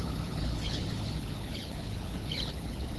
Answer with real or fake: fake